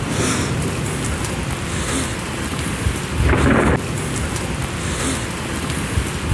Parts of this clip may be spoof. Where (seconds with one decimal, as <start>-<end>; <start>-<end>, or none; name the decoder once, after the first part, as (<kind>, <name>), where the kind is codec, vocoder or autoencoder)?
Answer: 2.5-3.1 (vocoder, BigVGAN v2)